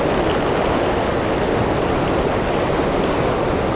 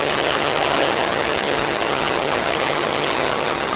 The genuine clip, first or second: first